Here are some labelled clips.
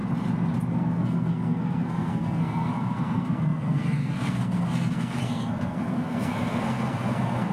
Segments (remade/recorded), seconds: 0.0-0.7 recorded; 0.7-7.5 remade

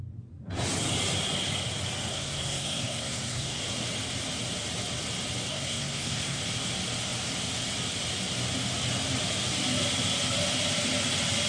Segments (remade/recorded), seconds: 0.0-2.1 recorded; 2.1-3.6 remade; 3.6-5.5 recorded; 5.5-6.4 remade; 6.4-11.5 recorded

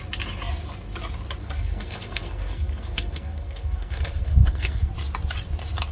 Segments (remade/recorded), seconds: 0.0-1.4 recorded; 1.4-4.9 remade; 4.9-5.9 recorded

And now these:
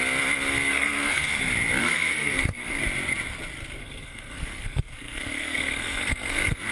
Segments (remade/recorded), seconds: 0.0-0.7 recorded; 0.7-1.4 remade; 1.4-1.8 recorded; 1.8-2.8 remade; 2.8-3.8 recorded; 3.8-6.7 remade

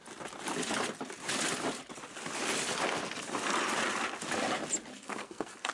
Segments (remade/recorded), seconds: 0.0-4.9 recorded; 4.9-5.7 remade